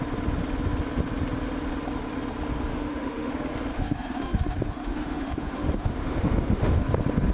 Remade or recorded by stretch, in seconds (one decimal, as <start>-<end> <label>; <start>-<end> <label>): 0.0-2.7 recorded; 2.7-3.3 remade; 3.3-3.7 recorded; 3.7-6.8 remade; 6.8-7.3 recorded